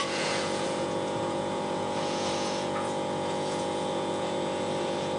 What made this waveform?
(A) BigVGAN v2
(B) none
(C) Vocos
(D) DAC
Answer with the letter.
C